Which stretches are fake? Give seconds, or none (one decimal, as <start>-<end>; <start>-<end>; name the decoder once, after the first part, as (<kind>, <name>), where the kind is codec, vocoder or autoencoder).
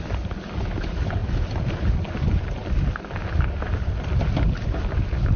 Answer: none